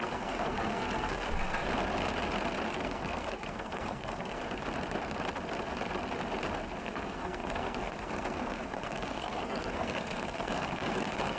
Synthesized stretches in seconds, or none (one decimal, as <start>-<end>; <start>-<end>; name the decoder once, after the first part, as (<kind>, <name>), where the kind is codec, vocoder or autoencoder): 0.0-1.7 (codec, SNAC); 2.7-4.4; 6.8-11.4